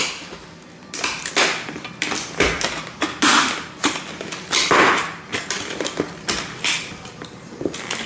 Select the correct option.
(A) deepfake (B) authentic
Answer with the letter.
B